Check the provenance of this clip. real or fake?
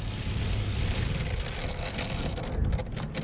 real